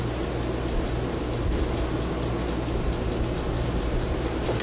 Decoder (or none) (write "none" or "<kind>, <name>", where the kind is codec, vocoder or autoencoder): none